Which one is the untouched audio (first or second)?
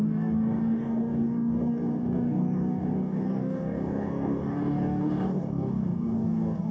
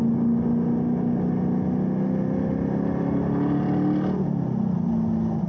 second